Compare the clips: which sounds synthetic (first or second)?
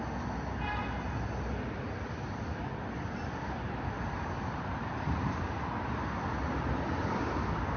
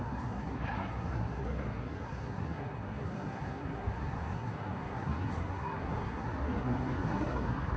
second